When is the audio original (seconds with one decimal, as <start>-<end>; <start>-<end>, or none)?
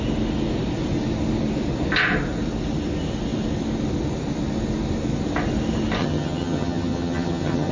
0.0-6.0